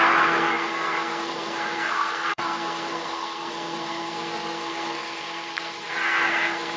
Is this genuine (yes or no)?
no